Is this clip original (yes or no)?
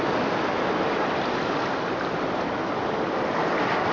yes